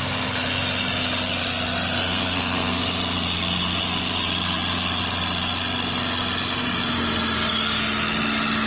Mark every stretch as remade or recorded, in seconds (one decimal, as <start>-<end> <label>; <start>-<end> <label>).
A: 0.0-2.0 recorded; 2.0-2.8 remade; 2.8-8.7 recorded

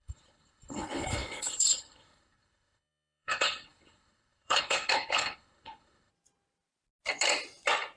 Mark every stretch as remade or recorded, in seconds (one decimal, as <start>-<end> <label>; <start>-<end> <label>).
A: 0.0-6.1 remade; 6.1-8.0 recorded